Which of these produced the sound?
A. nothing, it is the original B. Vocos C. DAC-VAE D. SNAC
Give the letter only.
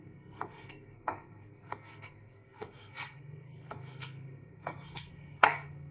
D